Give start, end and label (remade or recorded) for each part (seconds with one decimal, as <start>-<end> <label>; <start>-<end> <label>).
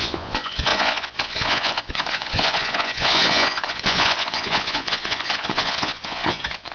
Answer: 0.0-6.7 remade